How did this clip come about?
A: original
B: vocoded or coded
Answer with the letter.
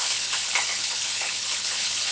B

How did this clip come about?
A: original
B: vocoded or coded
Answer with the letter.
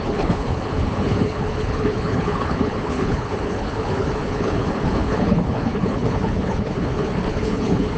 B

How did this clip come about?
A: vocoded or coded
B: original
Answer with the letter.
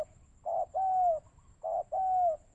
B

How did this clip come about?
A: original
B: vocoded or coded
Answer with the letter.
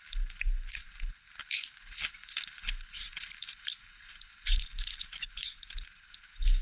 B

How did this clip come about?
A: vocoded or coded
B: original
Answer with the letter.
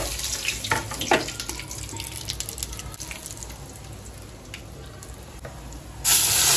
B